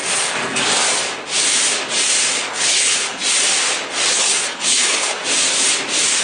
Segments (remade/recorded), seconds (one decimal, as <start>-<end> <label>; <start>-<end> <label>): 0.0-2.5 recorded; 2.5-3.2 remade; 3.2-4.1 recorded; 4.1-5.2 remade; 5.2-6.2 recorded